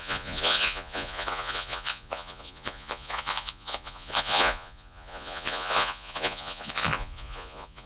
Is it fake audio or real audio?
fake